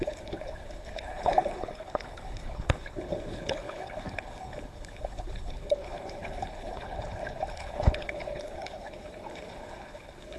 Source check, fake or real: fake